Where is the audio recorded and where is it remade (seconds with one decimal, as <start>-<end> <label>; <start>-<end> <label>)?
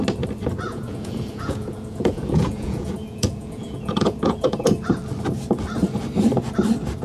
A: 0.0-0.7 recorded; 0.7-4.9 remade; 4.9-7.0 recorded